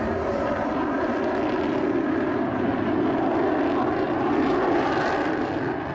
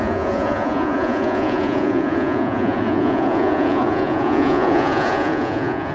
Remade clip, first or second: second